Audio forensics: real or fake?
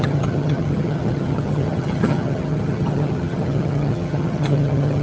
fake